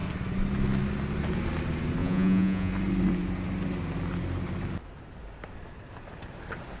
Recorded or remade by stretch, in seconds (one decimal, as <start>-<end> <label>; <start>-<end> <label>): 0.0-2.0 recorded; 2.0-2.7 remade; 2.7-6.8 recorded